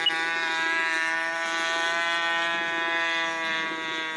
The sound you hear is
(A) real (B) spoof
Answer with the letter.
A